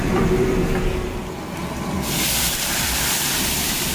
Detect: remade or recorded remade